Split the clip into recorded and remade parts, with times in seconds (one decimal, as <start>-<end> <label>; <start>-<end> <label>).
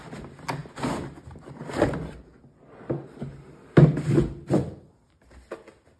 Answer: 0.0-6.0 recorded